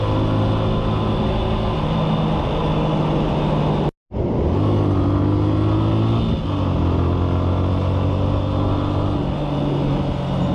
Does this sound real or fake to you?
real